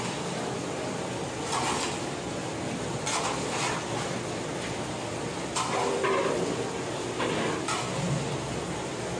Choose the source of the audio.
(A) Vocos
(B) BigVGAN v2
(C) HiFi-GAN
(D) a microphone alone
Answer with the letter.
D